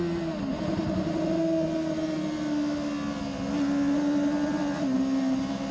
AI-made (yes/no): no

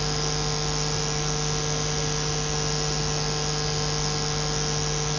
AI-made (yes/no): no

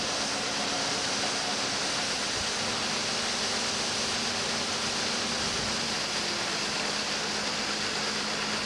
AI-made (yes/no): no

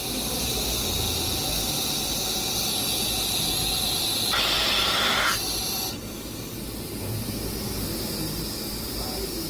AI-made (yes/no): no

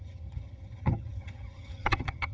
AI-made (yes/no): yes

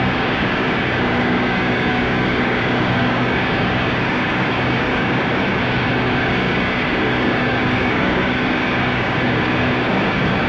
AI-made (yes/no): yes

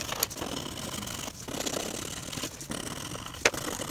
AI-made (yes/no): no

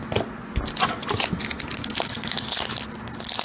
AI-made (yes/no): no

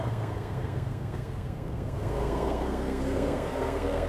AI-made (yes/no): yes